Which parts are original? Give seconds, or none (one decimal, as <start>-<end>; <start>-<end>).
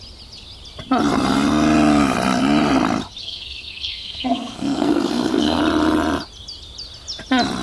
0.0-3.2; 5.6-7.6